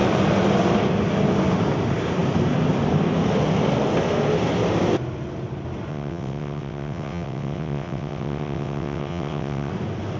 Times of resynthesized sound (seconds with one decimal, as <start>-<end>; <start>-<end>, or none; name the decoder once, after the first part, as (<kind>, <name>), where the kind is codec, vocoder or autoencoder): 5.9-9.7 (vocoder, WaveNeXt)